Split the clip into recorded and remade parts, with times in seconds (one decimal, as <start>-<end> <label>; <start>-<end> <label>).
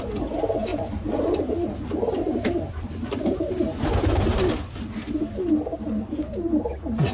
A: 0.0-0.7 recorded; 0.7-4.5 remade; 4.5-7.1 recorded